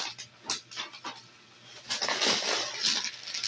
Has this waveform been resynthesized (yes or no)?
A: no